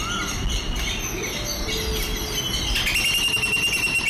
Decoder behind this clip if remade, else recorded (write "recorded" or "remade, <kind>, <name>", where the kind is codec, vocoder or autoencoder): recorded